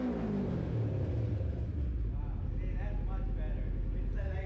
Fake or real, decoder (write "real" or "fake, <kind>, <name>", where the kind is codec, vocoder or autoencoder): real